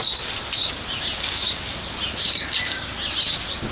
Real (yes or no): yes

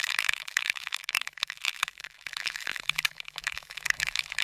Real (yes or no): no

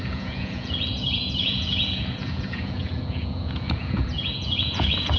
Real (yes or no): no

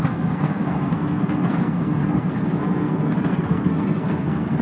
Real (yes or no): no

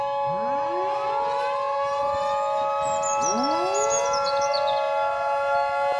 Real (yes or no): yes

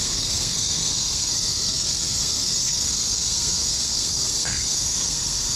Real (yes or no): no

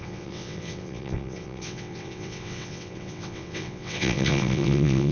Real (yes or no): no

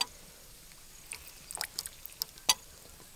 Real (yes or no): yes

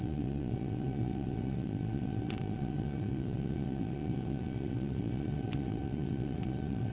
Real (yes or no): no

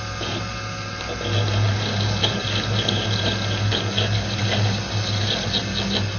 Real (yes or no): yes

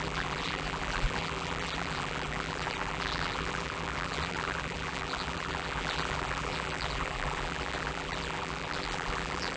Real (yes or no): no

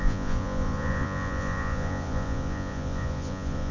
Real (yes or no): no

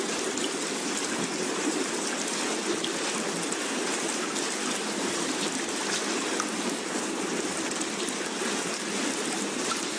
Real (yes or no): yes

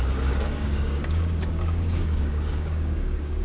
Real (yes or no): no